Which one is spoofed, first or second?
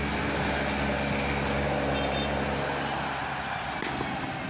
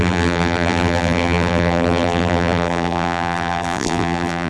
second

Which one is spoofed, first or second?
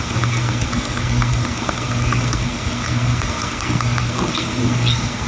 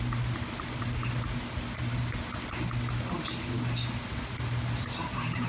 first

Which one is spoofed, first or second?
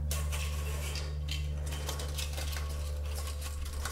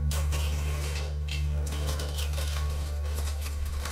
second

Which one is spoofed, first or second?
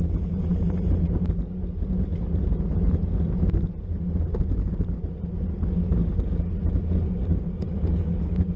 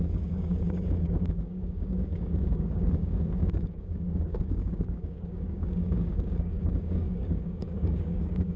second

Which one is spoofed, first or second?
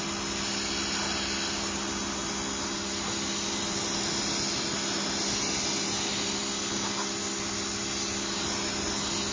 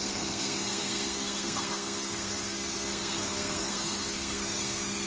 second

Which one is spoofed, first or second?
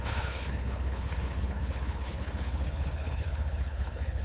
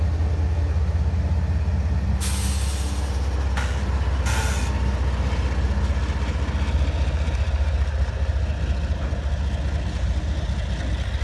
first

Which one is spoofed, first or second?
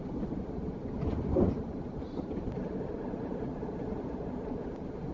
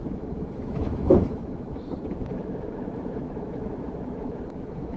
second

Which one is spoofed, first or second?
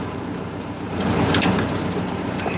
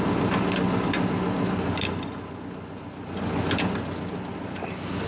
first